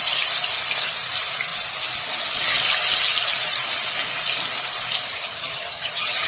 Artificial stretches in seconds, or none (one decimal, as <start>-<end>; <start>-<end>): 5.1-6.3

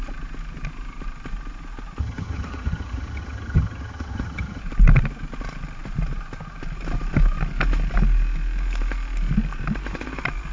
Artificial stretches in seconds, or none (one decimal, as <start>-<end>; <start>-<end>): 2.0-4.6

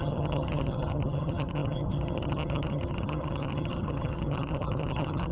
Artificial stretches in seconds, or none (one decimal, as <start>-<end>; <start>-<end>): 0.0-5.3